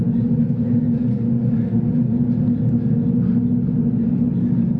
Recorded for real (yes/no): yes